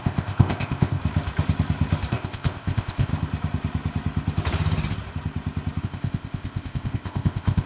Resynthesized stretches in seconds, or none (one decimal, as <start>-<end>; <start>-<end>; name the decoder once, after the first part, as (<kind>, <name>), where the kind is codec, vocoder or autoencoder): 0.0-1.0 (codec, ZipCodec); 2.1-3.1; 5.8-7.7